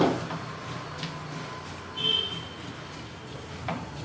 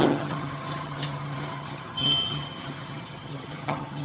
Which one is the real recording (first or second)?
first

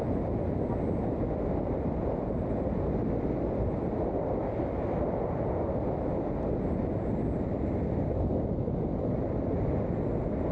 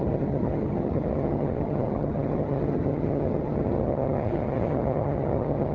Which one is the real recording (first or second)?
first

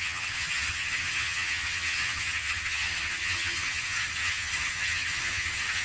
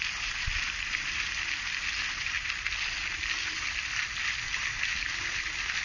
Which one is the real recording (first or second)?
second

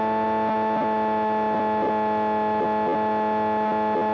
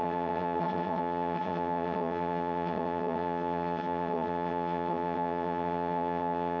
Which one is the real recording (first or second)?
first